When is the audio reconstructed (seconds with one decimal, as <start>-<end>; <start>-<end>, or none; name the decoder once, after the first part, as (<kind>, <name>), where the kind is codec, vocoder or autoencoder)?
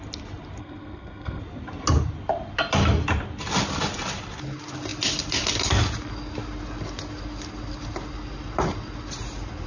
0.6-1.4 (codec, SNAC)